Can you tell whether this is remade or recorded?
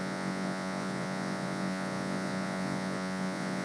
remade